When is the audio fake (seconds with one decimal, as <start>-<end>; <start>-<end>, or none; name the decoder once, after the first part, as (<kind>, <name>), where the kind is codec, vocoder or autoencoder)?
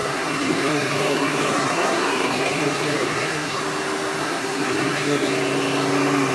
0.0-3.6 (codec, SNAC); 4.2-5.3